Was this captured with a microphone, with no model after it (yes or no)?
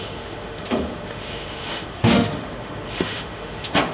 no